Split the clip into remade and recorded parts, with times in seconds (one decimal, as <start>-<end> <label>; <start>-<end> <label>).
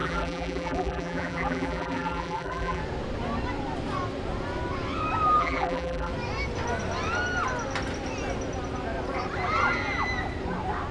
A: 0.0-2.8 remade; 2.8-5.4 recorded; 5.4-6.1 remade; 6.1-10.9 recorded